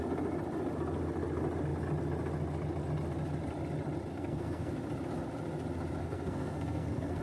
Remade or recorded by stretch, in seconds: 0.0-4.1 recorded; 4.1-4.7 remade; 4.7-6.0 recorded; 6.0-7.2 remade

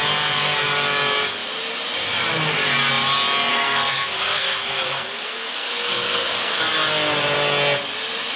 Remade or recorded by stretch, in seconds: 0.0-3.5 recorded; 3.5-6.6 remade; 6.6-8.4 recorded

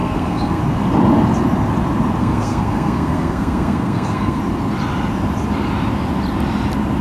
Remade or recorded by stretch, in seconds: 0.0-0.6 remade; 0.6-2.2 recorded; 2.2-4.4 remade; 4.4-7.0 recorded